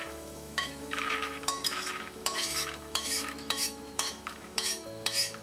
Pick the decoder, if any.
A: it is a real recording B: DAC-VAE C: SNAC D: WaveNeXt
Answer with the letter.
B